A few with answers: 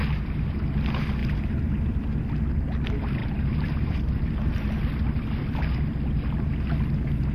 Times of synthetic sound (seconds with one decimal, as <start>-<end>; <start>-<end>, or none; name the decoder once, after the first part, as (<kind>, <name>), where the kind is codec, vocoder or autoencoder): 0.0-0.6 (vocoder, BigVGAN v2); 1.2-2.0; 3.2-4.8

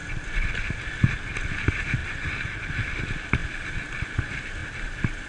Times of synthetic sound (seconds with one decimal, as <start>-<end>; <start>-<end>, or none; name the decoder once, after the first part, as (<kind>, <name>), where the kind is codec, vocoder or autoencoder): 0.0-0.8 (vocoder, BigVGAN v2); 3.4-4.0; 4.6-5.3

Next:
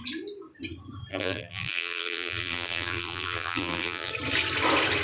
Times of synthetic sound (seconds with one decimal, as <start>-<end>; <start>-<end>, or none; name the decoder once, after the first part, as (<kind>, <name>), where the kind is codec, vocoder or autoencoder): 1.1-4.1 (vocoder, BigVGAN v2)